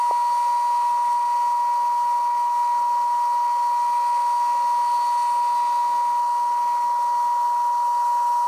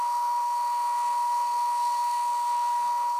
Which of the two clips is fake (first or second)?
second